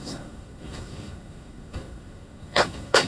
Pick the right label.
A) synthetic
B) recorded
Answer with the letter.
A